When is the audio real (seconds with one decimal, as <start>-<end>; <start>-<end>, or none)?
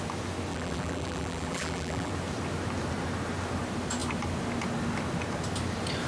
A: 0.0-0.5; 2.1-6.1